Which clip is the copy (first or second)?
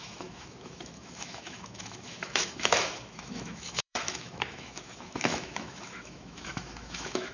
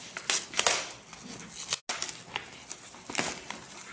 first